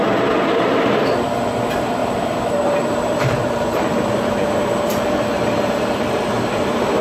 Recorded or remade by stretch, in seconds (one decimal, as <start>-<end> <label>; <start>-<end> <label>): 0.0-2.0 recorded; 2.0-6.2 remade; 6.2-7.0 recorded